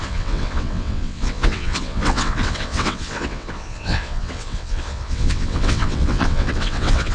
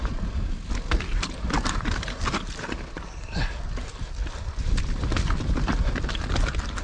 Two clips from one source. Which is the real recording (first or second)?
second